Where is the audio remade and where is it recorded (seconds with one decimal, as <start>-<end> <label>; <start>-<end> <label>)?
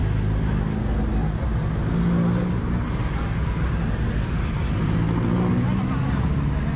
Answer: 0.0-6.8 recorded